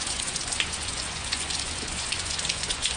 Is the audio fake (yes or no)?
yes